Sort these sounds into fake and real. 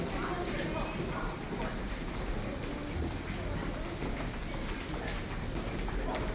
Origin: real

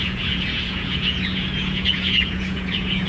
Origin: fake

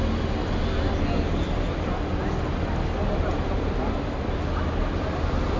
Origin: real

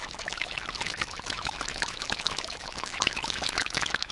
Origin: fake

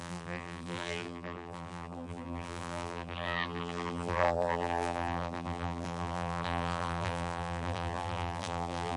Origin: fake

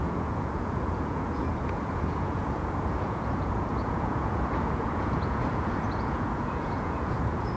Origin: fake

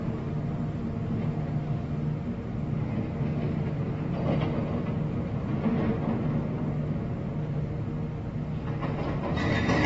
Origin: real